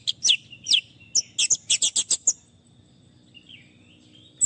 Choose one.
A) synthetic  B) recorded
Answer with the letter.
B